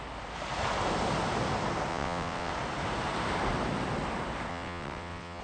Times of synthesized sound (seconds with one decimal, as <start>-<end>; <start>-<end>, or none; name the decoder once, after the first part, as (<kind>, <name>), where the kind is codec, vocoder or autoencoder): 1.9-2.5 (vocoder, WaveNeXt); 4.5-5.4